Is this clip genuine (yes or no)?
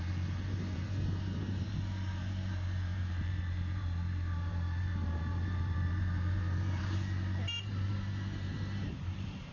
no